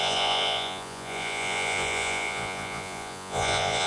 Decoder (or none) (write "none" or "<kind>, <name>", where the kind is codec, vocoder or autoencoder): vocoder, Vocos